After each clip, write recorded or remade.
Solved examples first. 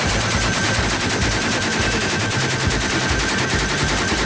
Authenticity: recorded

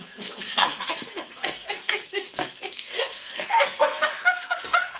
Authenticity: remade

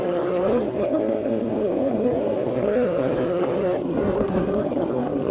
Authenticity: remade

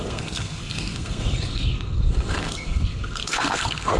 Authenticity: remade